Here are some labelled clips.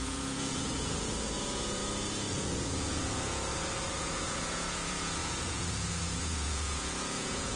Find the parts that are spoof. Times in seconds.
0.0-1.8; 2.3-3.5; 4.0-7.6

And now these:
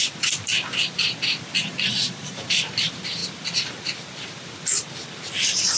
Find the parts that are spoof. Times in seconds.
1.6-2.5